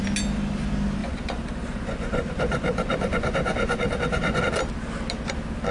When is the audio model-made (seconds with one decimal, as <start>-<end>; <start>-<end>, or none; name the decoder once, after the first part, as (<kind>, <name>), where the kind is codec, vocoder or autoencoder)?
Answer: 1.0-4.4 (vocoder, Vocos)